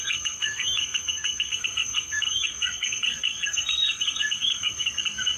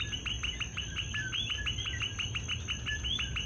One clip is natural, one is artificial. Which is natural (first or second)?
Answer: second